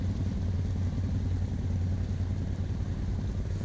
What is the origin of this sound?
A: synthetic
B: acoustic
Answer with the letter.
B